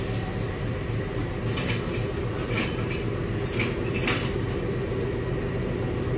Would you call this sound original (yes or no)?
yes